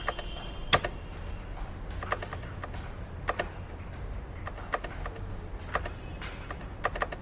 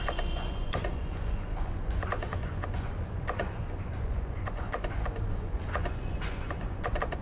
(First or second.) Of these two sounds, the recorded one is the first